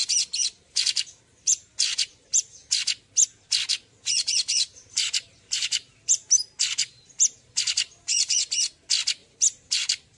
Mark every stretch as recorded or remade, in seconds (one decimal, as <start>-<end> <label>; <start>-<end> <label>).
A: 0.0-2.8 remade; 2.8-3.7 recorded; 3.7-8.5 remade; 8.5-9.2 recorded; 9.2-10.2 remade